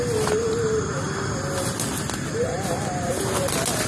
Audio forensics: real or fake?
real